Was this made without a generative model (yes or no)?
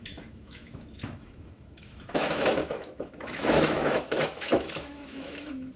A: no